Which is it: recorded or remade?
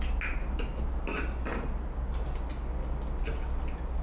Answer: recorded